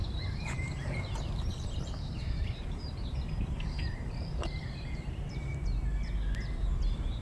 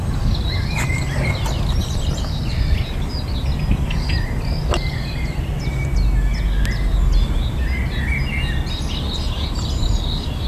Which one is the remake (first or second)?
first